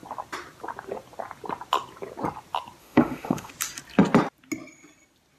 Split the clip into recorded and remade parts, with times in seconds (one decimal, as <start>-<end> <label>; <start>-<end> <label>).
0.0-2.8 recorded; 2.8-3.5 remade; 3.5-5.4 recorded